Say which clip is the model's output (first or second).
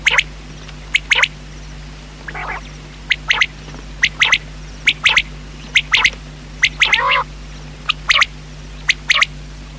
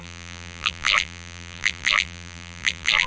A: second